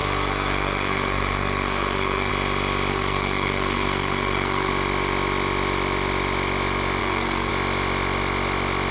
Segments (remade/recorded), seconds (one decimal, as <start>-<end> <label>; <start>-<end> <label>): 0.0-2.3 remade; 2.3-2.9 recorded; 2.9-4.7 remade; 4.7-7.0 recorded; 7.0-7.5 remade; 7.5-8.9 recorded